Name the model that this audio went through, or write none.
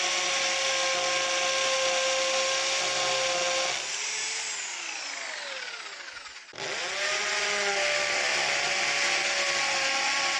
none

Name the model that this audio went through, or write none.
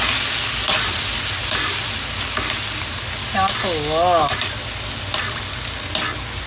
none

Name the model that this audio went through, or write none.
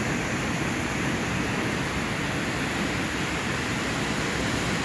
none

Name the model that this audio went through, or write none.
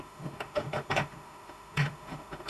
autoencoder, DAC-VAE